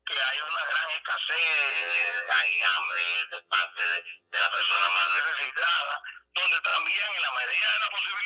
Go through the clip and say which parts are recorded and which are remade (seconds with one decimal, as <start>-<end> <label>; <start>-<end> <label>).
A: 0.0-1.7 recorded; 1.7-5.2 remade; 5.2-8.3 recorded